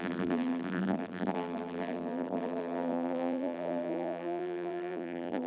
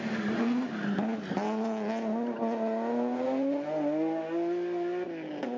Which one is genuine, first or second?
second